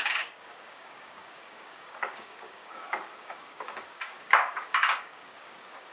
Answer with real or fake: fake